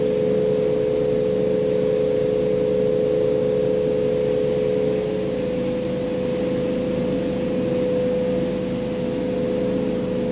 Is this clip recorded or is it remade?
recorded